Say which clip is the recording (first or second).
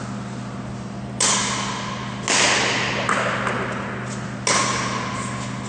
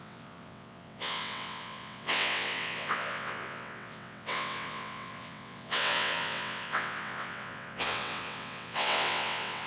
first